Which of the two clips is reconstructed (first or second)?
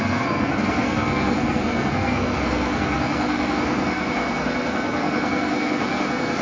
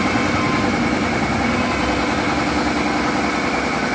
first